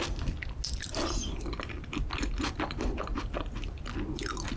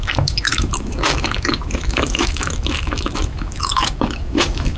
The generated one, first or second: second